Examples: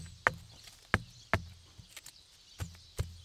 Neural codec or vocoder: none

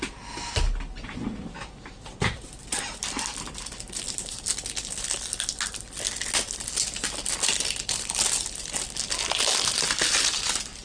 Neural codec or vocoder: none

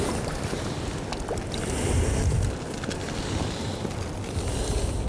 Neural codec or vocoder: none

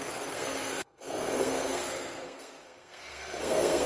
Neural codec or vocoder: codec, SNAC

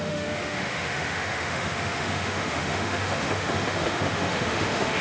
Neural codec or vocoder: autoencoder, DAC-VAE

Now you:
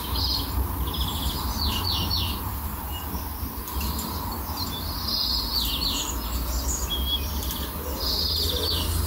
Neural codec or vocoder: none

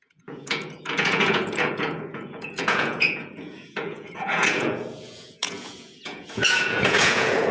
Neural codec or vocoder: vocoder, Vocos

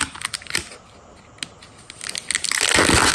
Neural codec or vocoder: none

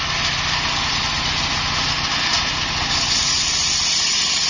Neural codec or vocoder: none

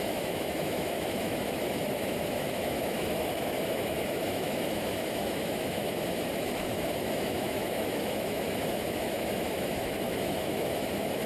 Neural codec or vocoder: autoencoder, DAC-VAE